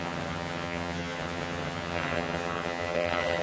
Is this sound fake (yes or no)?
yes